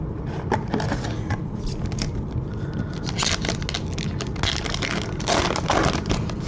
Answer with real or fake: real